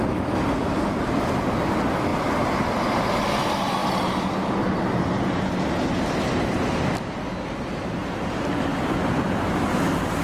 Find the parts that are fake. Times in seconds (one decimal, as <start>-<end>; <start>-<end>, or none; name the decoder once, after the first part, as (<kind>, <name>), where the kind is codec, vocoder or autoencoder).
none